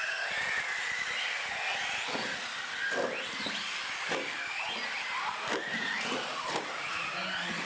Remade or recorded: recorded